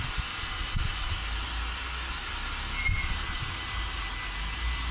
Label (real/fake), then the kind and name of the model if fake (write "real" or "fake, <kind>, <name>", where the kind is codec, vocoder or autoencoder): real